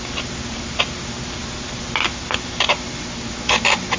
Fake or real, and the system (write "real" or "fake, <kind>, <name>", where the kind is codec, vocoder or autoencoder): real